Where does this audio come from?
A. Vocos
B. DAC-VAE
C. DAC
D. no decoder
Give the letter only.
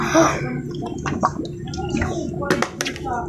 D